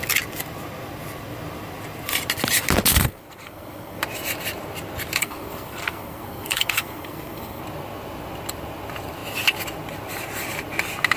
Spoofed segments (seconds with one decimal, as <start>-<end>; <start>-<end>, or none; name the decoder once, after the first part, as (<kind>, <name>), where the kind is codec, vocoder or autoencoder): 2.9-4.0 (codec, SNAC); 5.2-7.6